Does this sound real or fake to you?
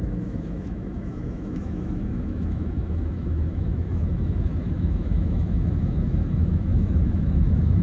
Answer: fake